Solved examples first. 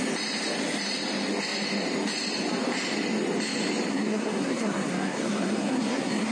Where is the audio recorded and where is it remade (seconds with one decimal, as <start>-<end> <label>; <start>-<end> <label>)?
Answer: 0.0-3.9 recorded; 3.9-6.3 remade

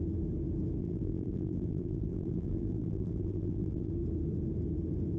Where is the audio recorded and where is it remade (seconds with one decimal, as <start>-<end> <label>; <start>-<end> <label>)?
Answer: 0.0-0.8 recorded; 0.8-3.9 remade; 3.9-5.2 recorded

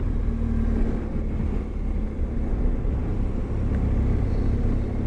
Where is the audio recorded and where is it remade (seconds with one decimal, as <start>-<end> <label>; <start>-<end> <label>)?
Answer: 0.0-5.1 recorded

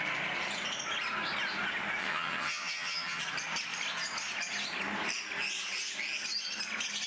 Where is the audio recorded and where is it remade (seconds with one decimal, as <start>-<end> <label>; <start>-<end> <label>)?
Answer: 0.0-2.0 recorded; 2.0-3.2 remade; 3.2-7.1 recorded

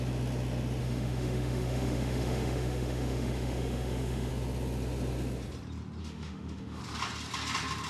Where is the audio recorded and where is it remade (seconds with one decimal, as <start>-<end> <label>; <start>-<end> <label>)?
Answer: 0.0-0.8 recorded; 0.8-4.3 remade; 4.3-6.0 recorded; 6.0-6.8 remade; 6.8-7.9 recorded